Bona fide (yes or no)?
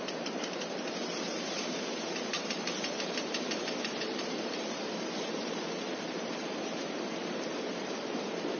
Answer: no